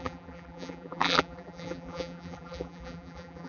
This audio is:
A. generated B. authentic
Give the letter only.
A